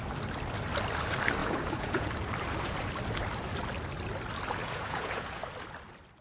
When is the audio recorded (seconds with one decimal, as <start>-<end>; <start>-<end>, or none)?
0.0-1.4; 2.1-4.6; 5.4-6.2